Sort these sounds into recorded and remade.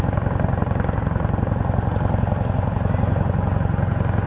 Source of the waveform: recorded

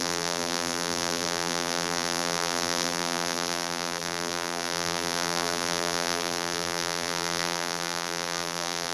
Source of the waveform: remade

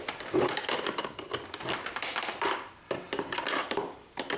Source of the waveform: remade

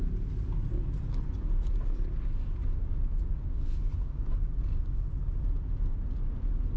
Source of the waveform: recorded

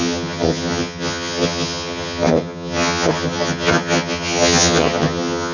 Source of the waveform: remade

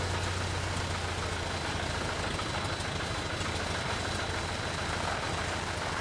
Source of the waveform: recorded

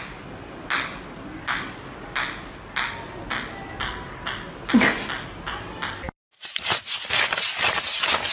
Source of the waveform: recorded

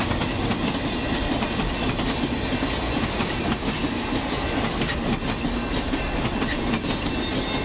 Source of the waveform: recorded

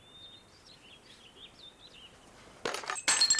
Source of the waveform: recorded